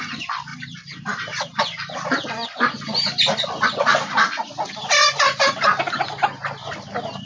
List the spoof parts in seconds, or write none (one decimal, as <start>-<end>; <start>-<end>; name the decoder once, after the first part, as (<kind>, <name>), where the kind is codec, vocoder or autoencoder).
0.5-4.9 (vocoder, BigVGAN v2); 6.6-7.3